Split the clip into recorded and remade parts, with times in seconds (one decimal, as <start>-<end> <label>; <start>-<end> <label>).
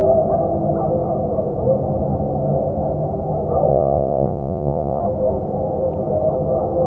0.0-3.7 recorded; 3.7-5.0 remade; 5.0-6.9 recorded